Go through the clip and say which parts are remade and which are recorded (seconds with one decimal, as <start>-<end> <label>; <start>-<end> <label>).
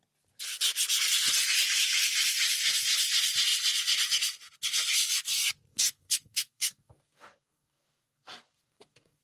0.0-5.7 recorded; 5.7-9.2 remade